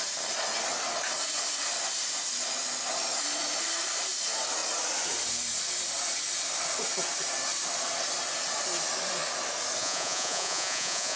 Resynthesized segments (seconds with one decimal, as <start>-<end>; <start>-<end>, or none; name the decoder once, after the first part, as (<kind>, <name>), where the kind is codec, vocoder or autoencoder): 9.8-11.2 (vocoder, Vocos)